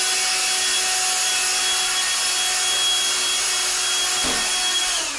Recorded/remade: recorded